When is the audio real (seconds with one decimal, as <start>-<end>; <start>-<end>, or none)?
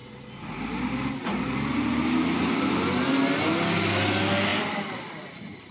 0.0-4.5; 5.0-5.7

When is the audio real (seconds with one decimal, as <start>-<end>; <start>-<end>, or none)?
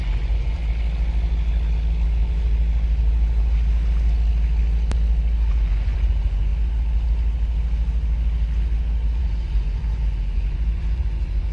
0.6-5.5; 6.5-9.2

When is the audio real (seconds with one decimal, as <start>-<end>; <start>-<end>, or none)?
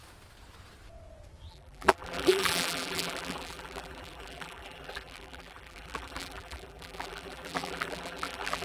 0.0-1.5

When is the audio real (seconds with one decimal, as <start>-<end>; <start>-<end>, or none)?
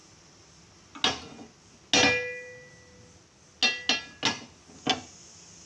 0.0-5.7